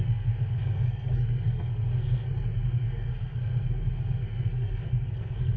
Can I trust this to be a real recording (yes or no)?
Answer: no